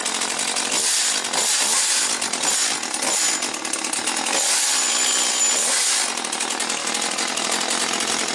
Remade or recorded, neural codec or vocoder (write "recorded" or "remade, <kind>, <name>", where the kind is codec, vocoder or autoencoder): recorded